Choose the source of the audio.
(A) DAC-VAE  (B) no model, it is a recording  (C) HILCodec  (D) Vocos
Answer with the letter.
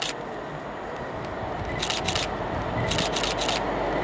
B